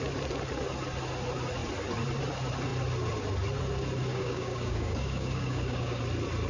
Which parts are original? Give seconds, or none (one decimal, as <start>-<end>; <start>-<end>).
0.0-4.1; 6.0-6.5